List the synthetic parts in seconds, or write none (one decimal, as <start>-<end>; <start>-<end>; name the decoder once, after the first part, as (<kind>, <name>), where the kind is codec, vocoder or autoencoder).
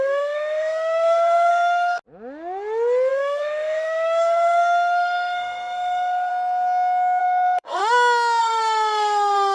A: 0.0-2.0 (codec, SNAC); 3.1-6.3; 7.2-7.8; 8.4-9.5